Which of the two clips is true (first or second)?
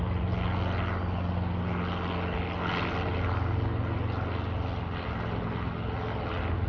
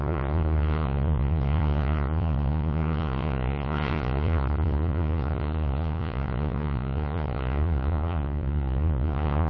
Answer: first